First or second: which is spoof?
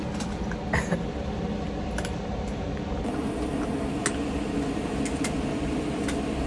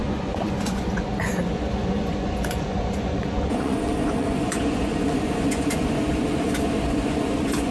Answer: second